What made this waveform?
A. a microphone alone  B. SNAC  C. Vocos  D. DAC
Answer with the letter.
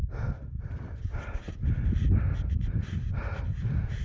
A